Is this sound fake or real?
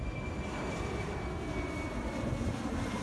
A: real